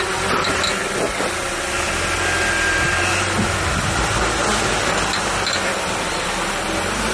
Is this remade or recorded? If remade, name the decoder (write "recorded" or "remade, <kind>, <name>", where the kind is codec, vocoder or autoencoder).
recorded